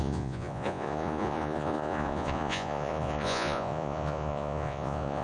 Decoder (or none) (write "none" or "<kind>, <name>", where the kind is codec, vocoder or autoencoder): vocoder, Vocos